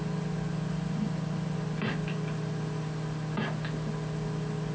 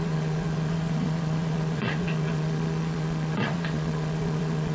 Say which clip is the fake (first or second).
second